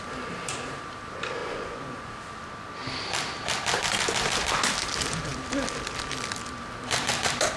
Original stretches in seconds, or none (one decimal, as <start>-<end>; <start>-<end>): 0.0-1.4; 2.1-7.6

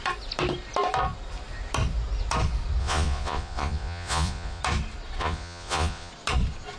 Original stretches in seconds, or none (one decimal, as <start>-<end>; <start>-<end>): 0.0-2.8; 4.6-5.2; 6.1-6.8